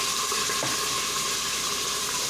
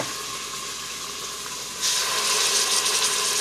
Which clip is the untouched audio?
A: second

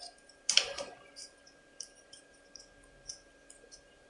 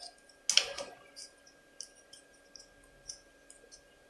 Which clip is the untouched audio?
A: second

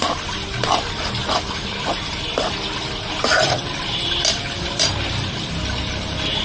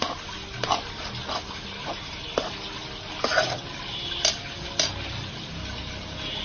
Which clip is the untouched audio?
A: second